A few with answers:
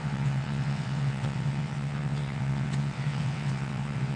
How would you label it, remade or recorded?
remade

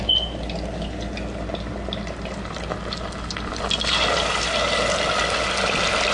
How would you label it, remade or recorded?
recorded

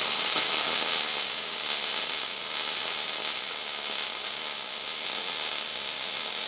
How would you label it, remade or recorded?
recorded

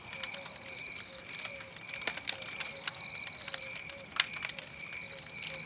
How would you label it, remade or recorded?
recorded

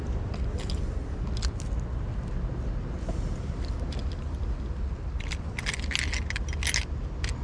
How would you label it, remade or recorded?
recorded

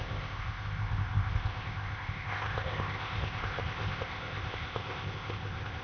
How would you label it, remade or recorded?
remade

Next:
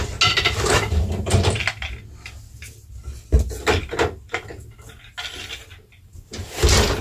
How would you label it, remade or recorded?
recorded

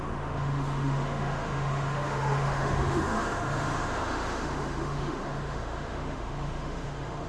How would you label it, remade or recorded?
remade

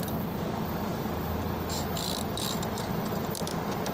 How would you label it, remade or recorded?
recorded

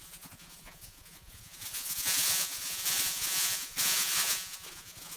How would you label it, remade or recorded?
remade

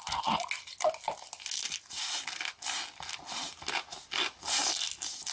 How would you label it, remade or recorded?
recorded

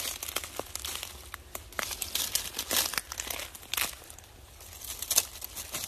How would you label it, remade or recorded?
recorded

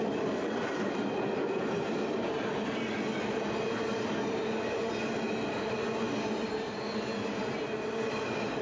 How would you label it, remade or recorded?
recorded